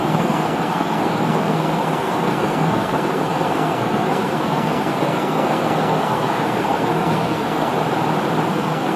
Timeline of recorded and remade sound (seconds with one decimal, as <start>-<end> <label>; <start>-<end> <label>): 0.0-7.7 remade; 7.7-8.5 recorded; 8.5-9.0 remade